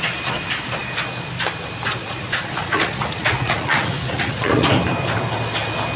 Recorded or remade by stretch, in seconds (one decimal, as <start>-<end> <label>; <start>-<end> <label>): 0.0-2.0 recorded; 2.0-4.7 remade; 4.7-6.0 recorded